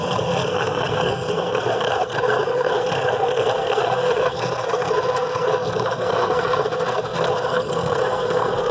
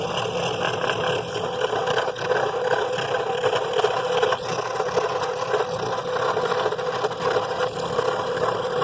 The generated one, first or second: first